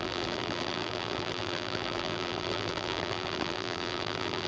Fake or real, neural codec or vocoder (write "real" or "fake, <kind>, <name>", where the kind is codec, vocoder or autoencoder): fake, vocoder, BigVGAN v2